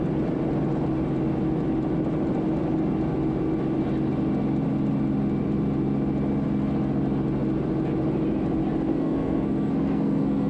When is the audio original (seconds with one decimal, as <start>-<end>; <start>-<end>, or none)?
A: 0.0-8.9